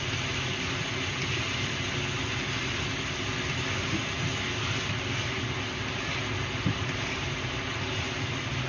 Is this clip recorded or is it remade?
recorded